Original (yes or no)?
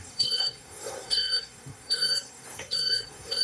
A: no